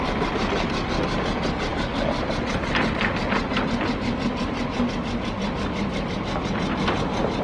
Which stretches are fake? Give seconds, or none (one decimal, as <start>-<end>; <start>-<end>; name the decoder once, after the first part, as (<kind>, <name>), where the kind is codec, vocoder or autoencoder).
none